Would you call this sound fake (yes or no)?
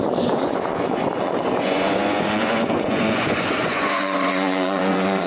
yes